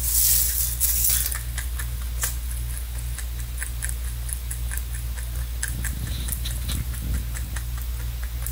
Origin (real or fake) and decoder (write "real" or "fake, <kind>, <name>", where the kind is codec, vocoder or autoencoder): real